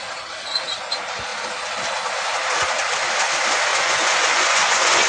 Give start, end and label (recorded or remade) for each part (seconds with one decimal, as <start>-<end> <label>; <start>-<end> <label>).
0.0-3.7 recorded; 3.7-5.1 remade